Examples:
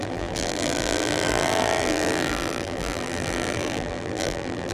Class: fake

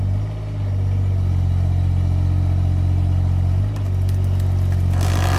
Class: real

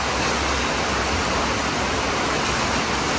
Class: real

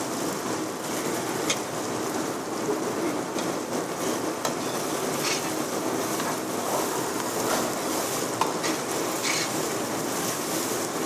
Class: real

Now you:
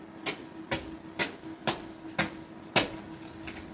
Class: real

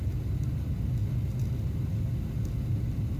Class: real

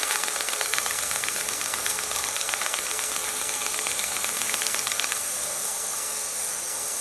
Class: fake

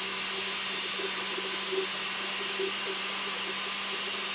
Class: real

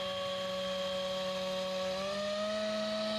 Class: real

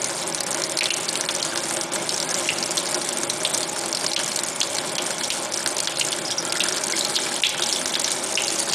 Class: real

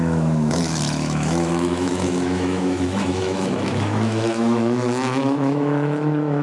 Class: fake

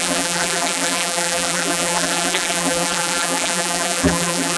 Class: fake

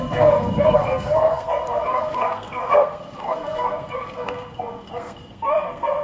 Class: fake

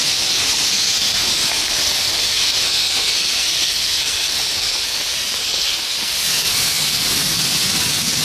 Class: fake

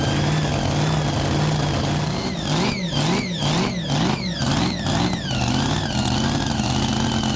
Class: real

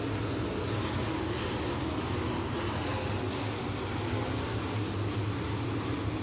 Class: real